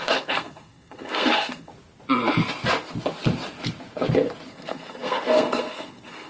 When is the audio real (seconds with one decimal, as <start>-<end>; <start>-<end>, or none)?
1.7-4.5